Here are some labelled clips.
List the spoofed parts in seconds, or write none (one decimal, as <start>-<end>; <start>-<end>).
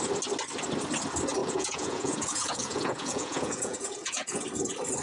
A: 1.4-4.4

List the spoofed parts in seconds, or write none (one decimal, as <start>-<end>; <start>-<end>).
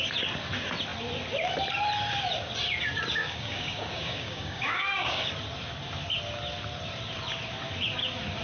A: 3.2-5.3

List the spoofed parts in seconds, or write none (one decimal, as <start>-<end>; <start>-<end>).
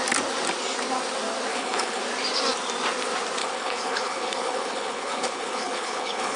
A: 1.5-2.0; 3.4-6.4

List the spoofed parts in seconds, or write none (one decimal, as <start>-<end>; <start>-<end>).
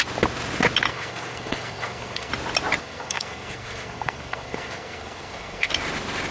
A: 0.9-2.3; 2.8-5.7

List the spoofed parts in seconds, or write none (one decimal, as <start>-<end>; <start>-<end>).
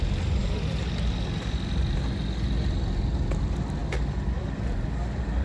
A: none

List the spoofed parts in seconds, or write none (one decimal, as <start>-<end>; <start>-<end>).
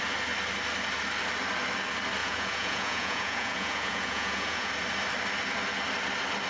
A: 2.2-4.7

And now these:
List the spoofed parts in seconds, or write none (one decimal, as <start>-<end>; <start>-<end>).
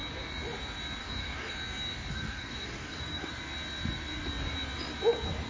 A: 1.0-1.5; 2.1-3.3